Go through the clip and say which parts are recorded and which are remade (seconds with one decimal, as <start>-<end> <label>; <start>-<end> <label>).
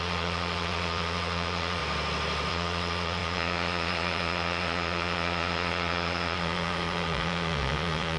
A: 0.0-1.8 remade; 1.8-2.5 recorded; 2.5-8.2 remade